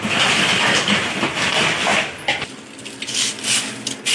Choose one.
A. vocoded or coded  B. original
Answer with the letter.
B